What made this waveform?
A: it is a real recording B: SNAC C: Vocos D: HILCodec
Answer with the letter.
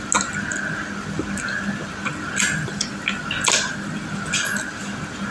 A